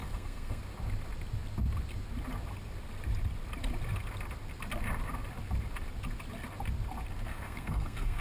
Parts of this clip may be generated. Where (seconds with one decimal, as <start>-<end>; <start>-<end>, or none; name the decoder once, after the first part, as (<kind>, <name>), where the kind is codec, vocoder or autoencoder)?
0.0-0.6 (codec, SNAC); 7.3-8.2